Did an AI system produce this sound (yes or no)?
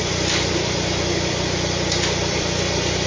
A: yes